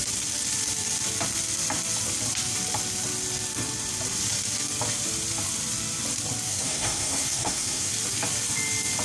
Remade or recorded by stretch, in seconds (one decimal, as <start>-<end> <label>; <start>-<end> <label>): 0.0-6.5 recorded; 6.5-7.9 remade; 7.9-9.0 recorded